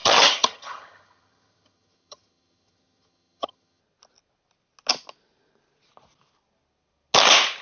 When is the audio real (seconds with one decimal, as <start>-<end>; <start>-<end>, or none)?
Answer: 3.8-7.6